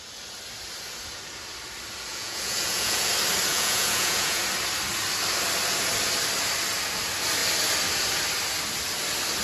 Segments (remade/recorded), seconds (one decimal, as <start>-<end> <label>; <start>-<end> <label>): 0.0-2.1 recorded; 2.1-3.1 remade; 3.1-3.5 recorded; 3.5-4.4 remade; 4.4-9.4 recorded